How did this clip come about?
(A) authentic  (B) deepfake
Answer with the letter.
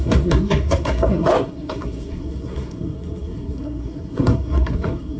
B